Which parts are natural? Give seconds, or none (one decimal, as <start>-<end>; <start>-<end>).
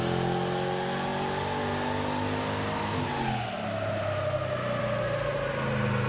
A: 0.0-6.1